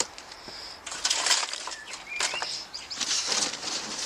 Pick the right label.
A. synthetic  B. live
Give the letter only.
A